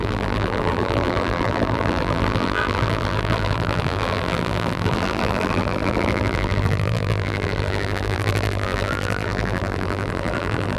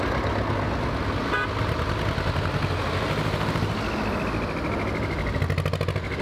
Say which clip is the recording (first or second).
second